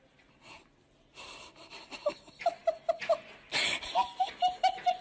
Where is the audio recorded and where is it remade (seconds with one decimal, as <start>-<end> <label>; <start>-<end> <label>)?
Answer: 0.0-5.0 recorded